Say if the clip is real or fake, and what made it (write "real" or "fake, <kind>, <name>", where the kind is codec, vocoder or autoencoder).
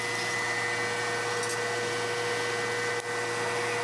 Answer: real